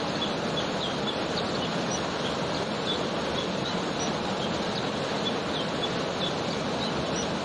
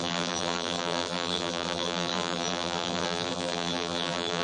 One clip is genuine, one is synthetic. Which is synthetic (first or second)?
second